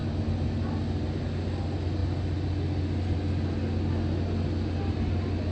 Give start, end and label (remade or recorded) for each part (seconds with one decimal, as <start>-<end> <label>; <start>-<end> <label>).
0.0-5.5 recorded